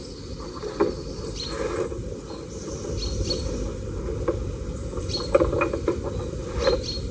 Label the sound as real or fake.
real